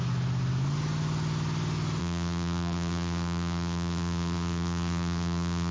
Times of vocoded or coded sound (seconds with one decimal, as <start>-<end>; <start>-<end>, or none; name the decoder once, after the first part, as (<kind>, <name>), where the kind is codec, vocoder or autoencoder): 2.0-5.7 (vocoder, BigVGAN v2)